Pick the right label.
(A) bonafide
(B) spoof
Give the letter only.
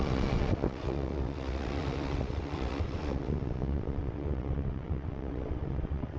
B